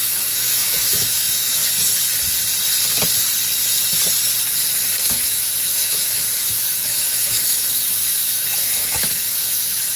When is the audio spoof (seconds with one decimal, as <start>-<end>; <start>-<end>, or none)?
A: 0.0-1.6; 5.1-10.0